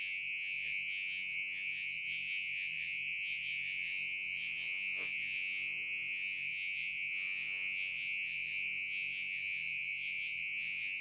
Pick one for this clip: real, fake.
fake